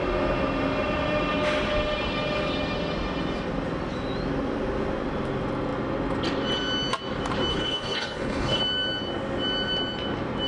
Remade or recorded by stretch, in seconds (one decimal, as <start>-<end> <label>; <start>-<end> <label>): 0.0-7.5 recorded; 7.5-8.6 remade; 8.6-10.5 recorded